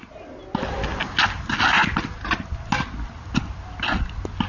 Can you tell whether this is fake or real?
real